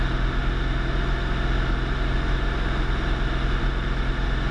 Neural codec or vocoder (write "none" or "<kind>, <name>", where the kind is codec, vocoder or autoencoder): none